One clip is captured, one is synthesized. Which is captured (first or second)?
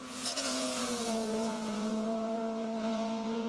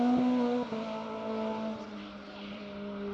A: second